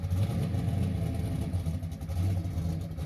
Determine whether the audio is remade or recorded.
recorded